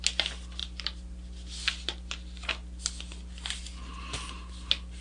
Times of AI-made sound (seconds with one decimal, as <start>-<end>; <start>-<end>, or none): none